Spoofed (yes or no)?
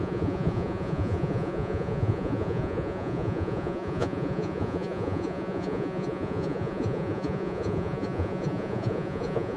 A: yes